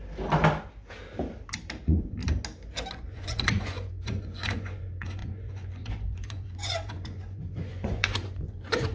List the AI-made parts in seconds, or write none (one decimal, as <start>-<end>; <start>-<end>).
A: 1.8-2.2; 2.9-8.9